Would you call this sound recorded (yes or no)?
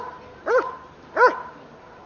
yes